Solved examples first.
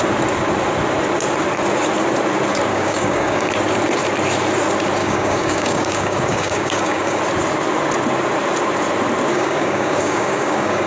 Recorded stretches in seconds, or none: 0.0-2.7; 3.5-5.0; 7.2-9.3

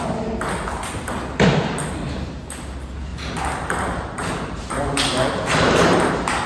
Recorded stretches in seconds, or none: 0.0-3.1; 6.1-6.5

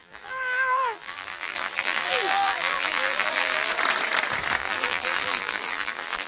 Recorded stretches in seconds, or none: 3.7-4.6

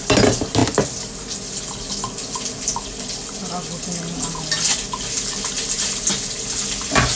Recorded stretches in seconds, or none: 0.0-7.2